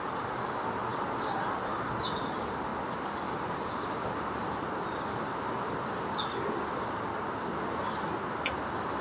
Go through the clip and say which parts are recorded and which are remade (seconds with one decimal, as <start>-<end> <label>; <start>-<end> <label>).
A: 0.0-9.0 recorded